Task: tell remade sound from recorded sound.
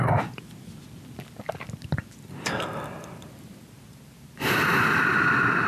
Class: recorded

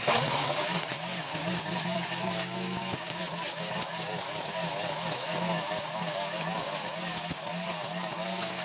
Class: remade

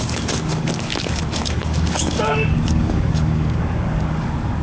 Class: remade